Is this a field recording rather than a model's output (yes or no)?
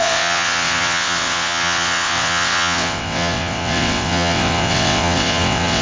no